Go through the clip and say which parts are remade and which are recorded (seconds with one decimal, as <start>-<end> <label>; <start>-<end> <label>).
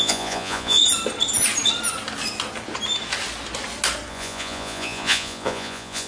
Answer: 0.0-0.8 remade; 0.8-4.1 recorded; 4.1-6.1 remade